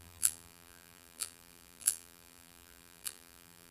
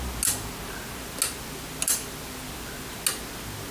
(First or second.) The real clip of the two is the second